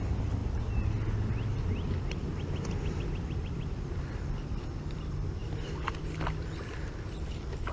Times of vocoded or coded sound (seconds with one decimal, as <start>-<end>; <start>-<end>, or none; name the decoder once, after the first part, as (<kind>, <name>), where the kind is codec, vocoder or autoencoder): none